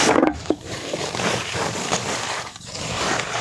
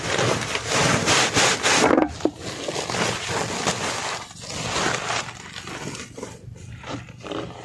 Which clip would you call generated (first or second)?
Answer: first